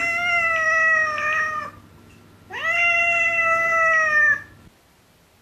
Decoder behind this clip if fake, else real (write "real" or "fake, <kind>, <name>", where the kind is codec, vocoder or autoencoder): real